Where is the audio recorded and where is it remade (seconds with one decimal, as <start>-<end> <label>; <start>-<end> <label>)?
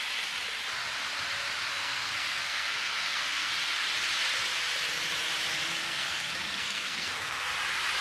0.0-1.7 recorded; 1.7-3.5 remade; 3.5-5.8 recorded; 5.8-7.5 remade; 7.5-8.0 recorded